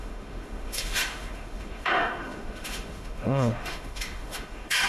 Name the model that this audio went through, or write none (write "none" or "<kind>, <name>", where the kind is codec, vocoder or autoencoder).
autoencoder, DAC-VAE